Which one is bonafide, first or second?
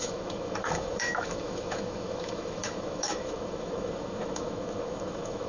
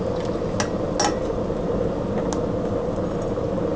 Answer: second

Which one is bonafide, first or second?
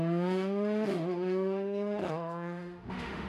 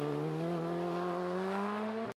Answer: second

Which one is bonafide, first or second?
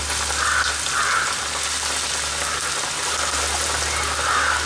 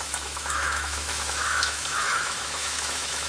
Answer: first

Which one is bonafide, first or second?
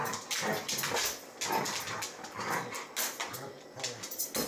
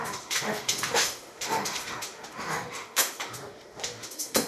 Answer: first